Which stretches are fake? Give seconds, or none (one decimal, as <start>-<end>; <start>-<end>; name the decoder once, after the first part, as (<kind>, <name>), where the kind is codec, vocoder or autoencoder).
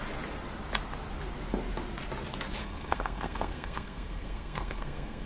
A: 2.6-5.3 (codec, SNAC)